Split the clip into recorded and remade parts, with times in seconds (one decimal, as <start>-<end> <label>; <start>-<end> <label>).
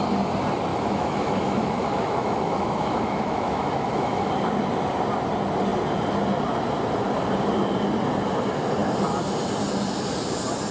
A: 0.0-0.7 recorded; 0.7-4.3 remade; 4.3-10.7 recorded